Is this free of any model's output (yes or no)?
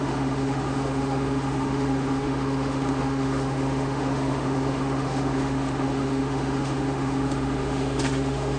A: no